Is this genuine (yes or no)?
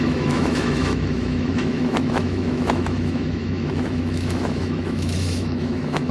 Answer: no